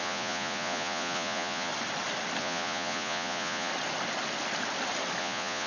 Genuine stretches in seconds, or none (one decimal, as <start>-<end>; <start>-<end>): 1.7-2.4; 3.7-5.2